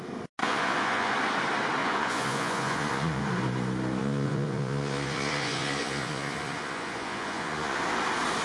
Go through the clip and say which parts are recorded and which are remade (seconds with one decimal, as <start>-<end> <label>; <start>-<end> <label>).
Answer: 0.0-0.4 recorded; 0.4-1.1 remade; 1.1-1.8 recorded; 1.8-3.2 remade; 3.2-4.0 recorded; 4.0-7.8 remade; 7.8-8.4 recorded